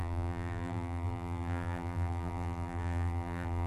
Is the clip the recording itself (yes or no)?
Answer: no